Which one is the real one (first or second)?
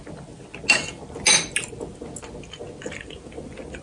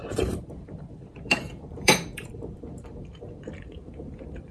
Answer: first